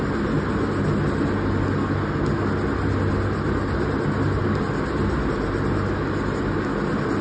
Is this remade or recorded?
recorded